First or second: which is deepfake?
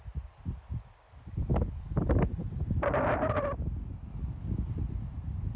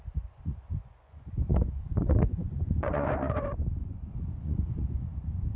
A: second